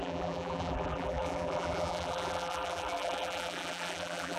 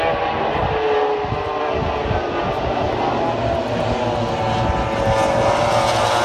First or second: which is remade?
first